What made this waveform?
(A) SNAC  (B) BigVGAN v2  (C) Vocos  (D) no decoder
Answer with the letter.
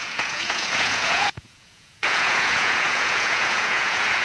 C